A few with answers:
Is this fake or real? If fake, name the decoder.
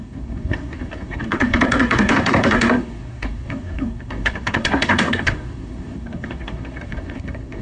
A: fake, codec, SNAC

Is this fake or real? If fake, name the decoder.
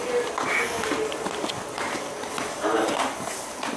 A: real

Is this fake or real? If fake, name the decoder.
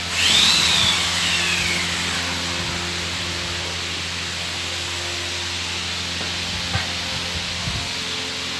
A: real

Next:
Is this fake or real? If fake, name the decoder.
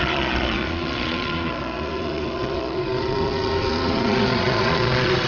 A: fake, vocoder, Vocos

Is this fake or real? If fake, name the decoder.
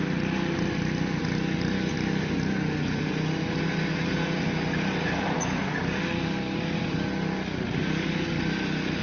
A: real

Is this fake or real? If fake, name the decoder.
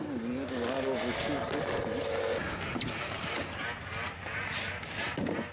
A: real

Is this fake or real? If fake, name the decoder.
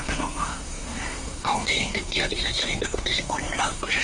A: fake, codec, SNAC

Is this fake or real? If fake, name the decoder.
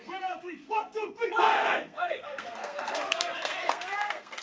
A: fake, codec, SNAC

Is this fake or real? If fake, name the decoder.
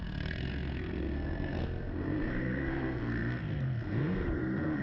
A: fake, codec, SNAC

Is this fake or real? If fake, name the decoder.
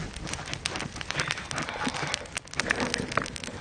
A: real